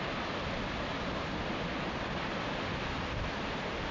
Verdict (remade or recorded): recorded